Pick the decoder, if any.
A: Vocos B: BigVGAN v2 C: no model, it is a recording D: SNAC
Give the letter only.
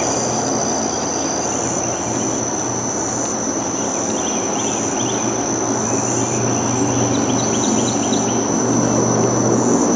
C